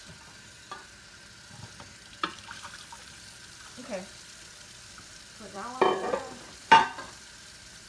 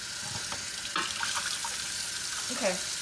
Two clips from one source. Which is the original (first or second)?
second